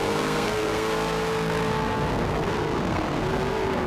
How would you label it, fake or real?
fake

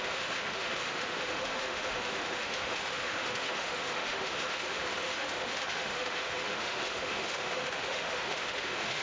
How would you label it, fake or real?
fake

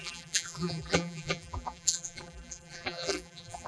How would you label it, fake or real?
fake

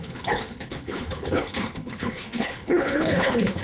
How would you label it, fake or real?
fake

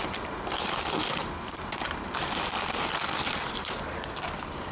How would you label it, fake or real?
real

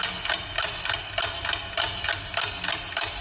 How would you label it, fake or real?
real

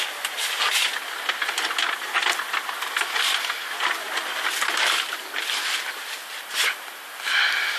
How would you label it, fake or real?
real